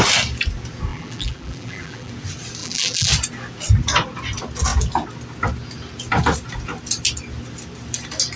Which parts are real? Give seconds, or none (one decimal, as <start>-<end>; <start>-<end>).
0.0-0.9; 2.1-2.6; 3.1-8.4

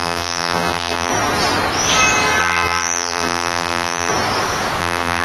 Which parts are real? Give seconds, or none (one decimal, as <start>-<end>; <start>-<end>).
1.1-2.4; 4.1-4.8

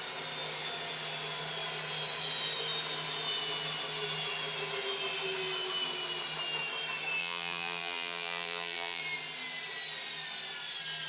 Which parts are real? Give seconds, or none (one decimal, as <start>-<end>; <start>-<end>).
0.0-7.2; 9.0-11.1